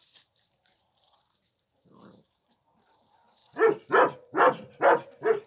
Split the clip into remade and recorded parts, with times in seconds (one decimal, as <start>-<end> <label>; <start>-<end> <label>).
0.0-3.4 remade; 3.4-5.5 recorded